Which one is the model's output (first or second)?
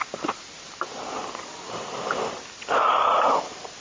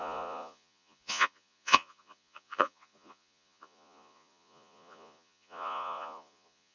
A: second